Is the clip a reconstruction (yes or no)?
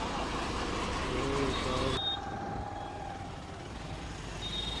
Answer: no